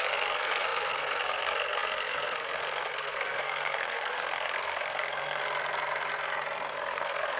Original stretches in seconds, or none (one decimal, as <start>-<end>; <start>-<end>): 5.4-6.7